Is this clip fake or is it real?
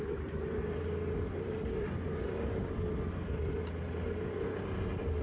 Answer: real